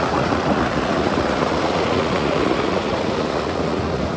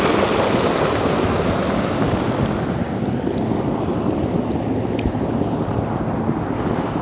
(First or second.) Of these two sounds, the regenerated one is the first